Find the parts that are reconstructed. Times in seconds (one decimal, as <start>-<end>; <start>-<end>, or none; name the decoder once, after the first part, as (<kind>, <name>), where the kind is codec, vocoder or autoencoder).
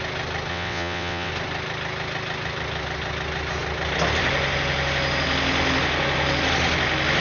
0.5-1.3 (vocoder, WaveNeXt)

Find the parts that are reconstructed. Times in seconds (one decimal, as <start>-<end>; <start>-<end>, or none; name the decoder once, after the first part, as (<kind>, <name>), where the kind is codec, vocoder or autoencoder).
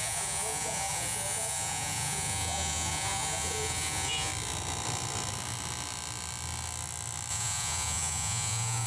0.0-4.3 (vocoder, Vocos); 7.3-8.9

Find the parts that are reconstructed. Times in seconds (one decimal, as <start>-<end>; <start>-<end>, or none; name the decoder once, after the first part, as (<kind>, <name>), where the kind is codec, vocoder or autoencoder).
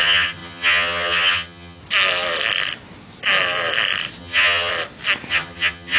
0.0-1.8 (vocoder, HiFi-GAN); 4.2-4.7; 5.3-6.0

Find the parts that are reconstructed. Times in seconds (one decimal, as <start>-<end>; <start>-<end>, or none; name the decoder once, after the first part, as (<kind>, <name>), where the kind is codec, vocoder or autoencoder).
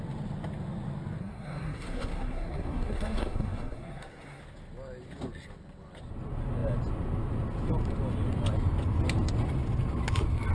1.2-4.4 (codec, SNAC)